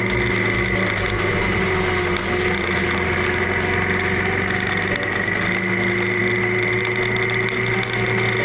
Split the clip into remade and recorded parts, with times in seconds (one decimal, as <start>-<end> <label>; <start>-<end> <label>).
0.0-8.4 recorded